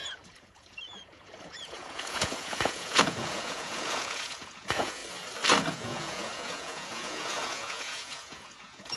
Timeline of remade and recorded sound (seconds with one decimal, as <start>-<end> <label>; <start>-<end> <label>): 0.0-5.0 remade; 5.0-5.7 recorded; 5.7-9.0 remade